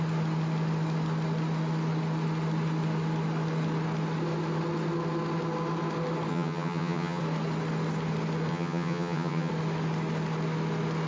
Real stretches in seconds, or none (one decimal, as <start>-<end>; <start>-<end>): 0.0-6.3; 7.2-8.5; 9.5-11.1